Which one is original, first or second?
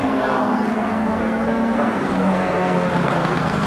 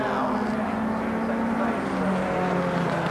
second